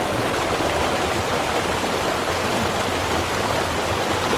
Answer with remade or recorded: recorded